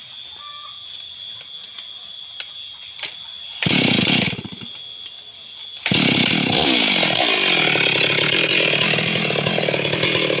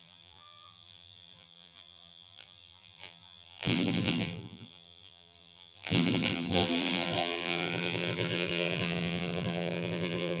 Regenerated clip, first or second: second